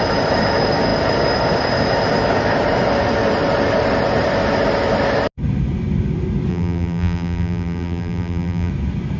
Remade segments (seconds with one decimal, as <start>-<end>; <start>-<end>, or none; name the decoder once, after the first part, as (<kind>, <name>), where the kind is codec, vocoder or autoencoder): 6.5-8.7 (vocoder, BigVGAN v2)